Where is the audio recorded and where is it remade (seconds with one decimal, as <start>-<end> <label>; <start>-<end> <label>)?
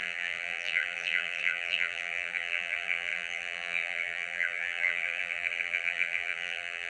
0.0-6.9 remade